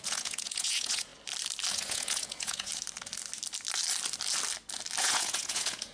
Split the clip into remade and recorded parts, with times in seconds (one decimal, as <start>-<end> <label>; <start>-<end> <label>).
0.0-1.1 remade; 1.1-1.7 recorded; 1.7-2.7 remade; 2.7-5.0 recorded; 5.0-5.9 remade